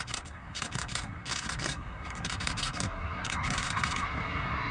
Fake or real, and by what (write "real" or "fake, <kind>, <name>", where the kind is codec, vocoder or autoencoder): fake, codec, SNAC